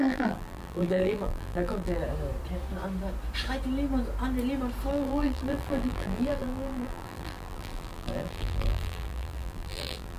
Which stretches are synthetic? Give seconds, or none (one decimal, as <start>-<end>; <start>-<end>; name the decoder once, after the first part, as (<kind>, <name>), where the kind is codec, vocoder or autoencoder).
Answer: 0.0-2.0 (vocoder, BigVGAN v2); 4.9-10.2